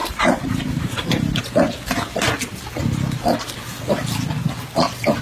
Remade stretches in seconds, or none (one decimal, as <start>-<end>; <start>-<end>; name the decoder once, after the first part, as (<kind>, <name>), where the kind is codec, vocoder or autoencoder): 0.0-1.4 (vocoder, BigVGAN v2)